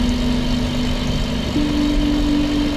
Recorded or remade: recorded